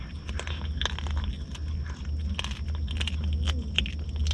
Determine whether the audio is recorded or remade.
recorded